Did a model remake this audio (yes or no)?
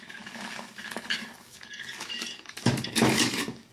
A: yes